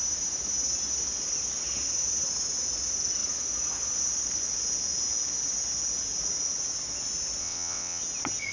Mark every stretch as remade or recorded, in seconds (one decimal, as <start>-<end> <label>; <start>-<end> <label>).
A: 0.0-7.4 recorded; 7.4-8.0 remade; 8.0-8.5 recorded